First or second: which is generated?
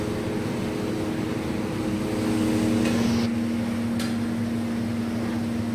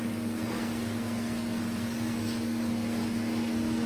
second